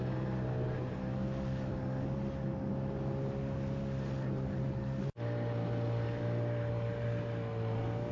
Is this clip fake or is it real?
real